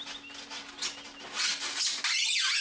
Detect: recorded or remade recorded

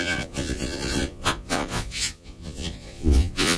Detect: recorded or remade remade